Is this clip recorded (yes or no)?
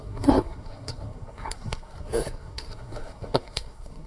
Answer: no